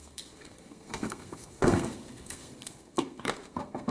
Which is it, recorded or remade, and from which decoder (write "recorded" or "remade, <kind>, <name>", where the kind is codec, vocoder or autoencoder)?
remade, codec, SNAC